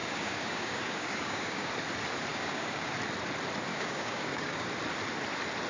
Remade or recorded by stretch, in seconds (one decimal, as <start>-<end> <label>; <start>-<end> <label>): 0.0-1.7 remade; 1.7-2.3 recorded; 2.3-2.9 remade; 2.9-3.7 recorded; 3.7-4.7 remade; 4.7-5.7 recorded